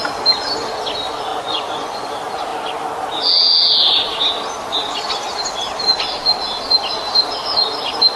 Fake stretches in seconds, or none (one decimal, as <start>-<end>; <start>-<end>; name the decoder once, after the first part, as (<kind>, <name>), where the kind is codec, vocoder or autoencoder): 1.3-2.1 (vocoder, Vocos)